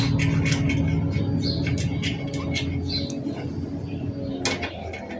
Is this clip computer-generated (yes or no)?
no